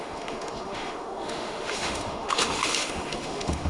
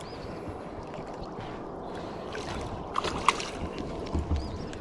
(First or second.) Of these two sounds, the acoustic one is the second